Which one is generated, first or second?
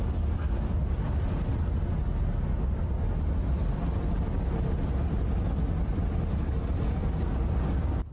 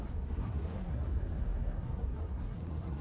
second